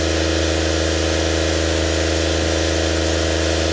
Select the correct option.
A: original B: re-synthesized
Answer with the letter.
A